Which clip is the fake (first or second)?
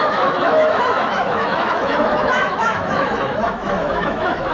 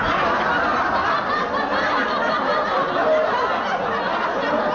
first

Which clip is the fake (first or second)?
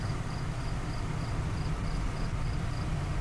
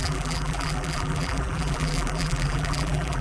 second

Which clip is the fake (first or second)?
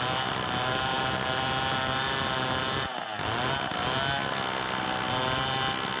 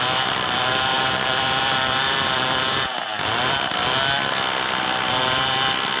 second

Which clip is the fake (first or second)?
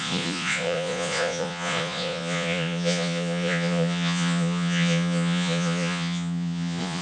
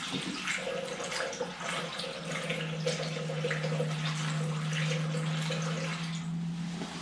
first